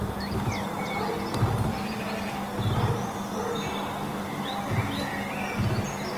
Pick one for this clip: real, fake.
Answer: real